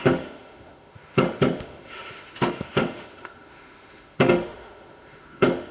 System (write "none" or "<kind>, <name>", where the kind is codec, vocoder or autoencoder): autoencoder, DAC-VAE